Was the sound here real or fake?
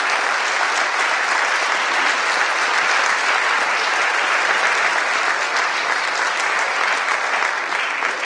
real